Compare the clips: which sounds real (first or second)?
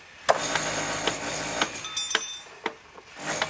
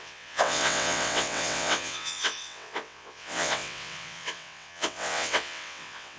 first